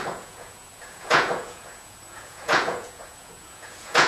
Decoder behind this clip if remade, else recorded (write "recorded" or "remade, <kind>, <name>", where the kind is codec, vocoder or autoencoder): remade, vocoder, Vocos